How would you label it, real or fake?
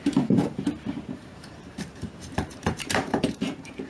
fake